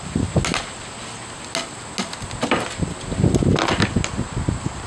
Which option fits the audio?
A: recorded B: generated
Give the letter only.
A